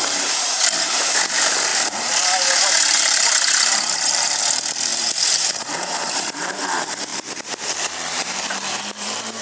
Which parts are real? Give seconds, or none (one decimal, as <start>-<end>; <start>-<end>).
none